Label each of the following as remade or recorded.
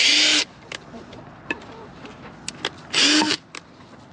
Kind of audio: recorded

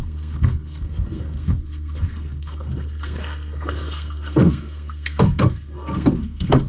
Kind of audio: remade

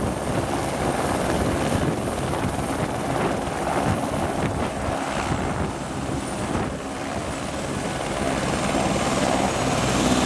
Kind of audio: remade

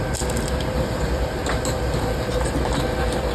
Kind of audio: recorded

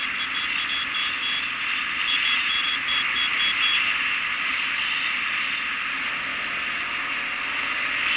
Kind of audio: recorded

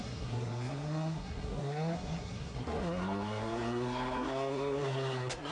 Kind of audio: remade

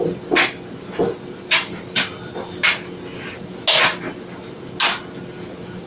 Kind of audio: recorded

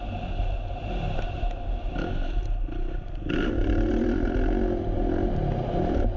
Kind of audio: recorded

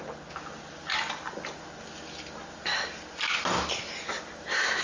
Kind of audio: recorded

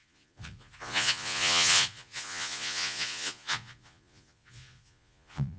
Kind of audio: remade